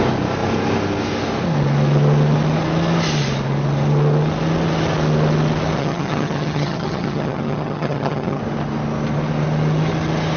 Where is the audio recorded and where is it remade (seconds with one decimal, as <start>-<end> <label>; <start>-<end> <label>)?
0.0-5.8 recorded; 5.8-8.4 remade; 8.4-10.4 recorded